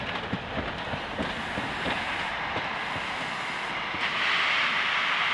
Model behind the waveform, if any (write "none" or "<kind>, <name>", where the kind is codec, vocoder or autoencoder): none